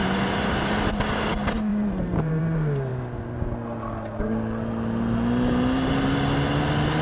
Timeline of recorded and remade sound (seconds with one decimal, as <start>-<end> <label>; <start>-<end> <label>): 0.0-1.7 recorded; 1.7-2.4 remade; 2.4-7.0 recorded